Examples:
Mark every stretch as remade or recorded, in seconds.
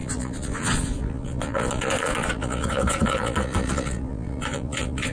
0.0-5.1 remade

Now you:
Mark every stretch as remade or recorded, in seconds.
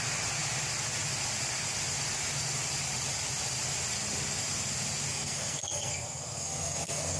0.0-5.1 recorded; 5.1-7.2 remade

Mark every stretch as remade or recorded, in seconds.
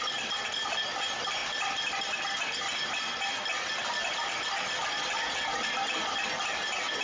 0.0-7.0 recorded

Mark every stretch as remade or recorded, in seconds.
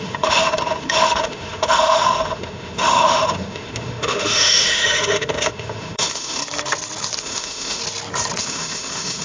0.0-6.4 remade; 6.4-7.2 recorded; 7.2-7.8 remade; 7.8-8.4 recorded; 8.4-9.2 remade